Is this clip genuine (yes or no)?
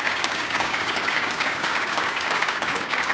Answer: no